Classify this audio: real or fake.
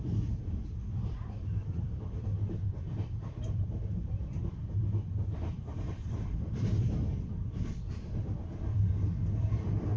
fake